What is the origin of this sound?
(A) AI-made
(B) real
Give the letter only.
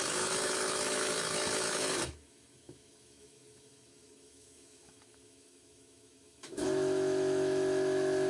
A